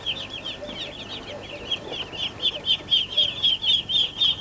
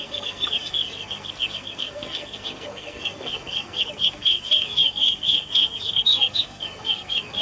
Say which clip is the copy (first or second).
second